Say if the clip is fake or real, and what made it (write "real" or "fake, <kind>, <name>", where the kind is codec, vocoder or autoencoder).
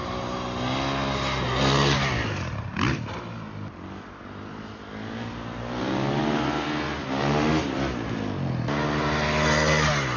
real